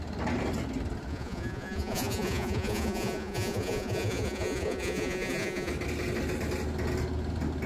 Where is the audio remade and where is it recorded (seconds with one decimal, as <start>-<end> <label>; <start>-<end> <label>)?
0.0-1.1 recorded; 1.1-5.7 remade; 5.7-7.7 recorded